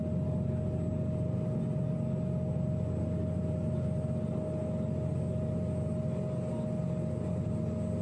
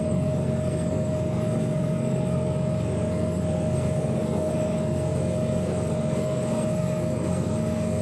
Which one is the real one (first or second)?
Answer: first